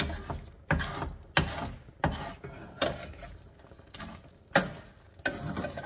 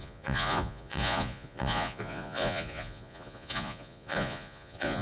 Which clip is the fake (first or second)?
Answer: second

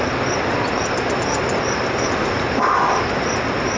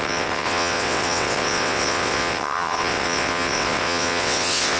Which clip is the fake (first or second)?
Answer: second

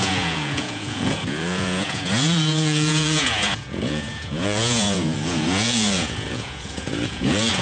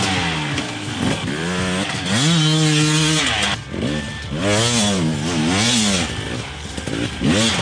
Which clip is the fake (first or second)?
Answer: first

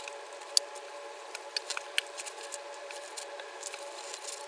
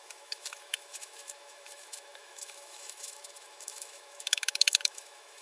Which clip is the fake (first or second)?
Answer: second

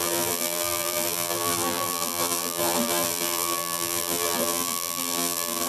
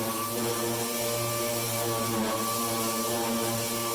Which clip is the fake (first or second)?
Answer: first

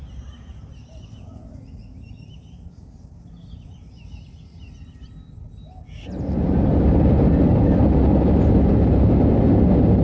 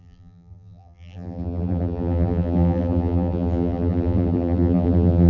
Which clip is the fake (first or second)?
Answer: second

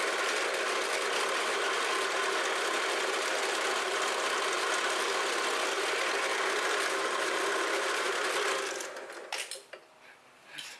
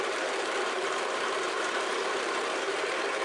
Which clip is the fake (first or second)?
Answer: second